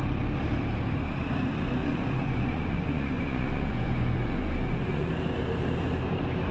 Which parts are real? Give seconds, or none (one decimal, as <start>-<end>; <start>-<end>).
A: 0.0-1.8; 5.1-6.5